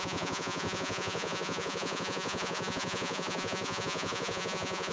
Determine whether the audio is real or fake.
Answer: fake